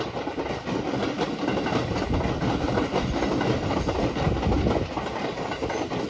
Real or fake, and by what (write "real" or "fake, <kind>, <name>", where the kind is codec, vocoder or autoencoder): real